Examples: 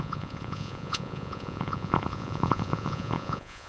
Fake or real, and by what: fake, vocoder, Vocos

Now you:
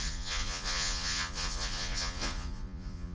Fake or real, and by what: fake, vocoder, Vocos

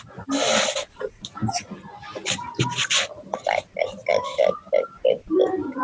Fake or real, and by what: real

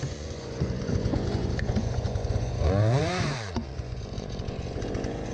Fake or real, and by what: fake, vocoder, Vocos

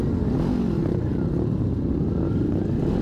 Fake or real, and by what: real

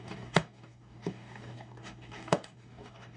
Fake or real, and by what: fake, codec, DAC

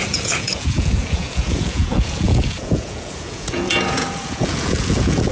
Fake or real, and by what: fake, vocoder, Vocos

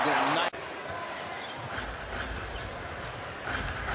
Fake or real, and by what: fake, vocoder, BigVGAN v2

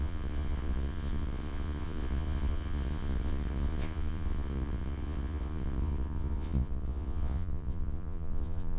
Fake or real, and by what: fake, vocoder, Vocos